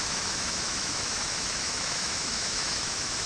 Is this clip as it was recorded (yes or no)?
no